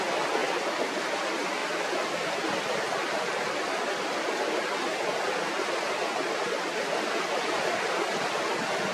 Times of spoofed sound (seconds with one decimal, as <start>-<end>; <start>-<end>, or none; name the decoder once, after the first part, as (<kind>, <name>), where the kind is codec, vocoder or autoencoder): none